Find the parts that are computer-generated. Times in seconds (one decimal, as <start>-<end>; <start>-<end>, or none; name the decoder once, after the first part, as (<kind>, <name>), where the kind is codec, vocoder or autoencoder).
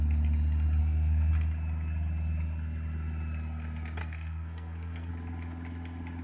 0.8-1.3 (codec, SNAC); 4.0-5.1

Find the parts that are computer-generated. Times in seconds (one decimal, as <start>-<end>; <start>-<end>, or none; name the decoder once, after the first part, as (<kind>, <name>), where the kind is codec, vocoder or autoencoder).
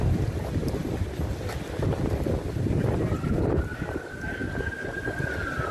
none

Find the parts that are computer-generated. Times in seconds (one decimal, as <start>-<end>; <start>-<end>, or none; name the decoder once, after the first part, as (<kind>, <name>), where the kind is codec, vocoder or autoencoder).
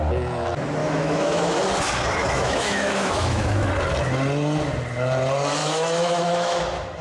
0.8-1.6 (autoencoder, DAC-VAE); 2.2-3.7; 5.6-6.6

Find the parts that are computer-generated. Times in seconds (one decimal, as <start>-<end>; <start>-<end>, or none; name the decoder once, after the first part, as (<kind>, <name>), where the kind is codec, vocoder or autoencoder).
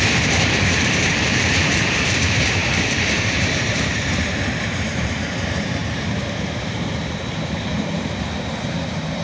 0.0-9.2 (vocoder, BigVGAN v2)